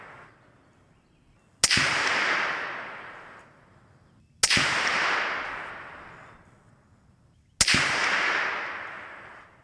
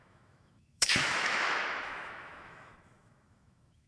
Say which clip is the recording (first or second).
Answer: first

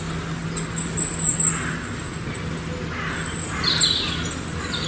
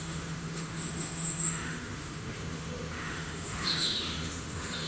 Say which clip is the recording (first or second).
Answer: first